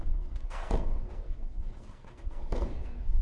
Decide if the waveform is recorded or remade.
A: remade